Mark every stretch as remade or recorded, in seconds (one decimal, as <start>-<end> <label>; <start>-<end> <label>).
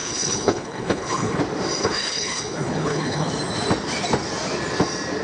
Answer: 0.0-1.4 remade; 1.4-1.8 recorded; 1.8-3.3 remade; 3.3-5.2 recorded